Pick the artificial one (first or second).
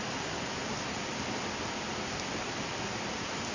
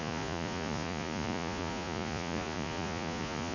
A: second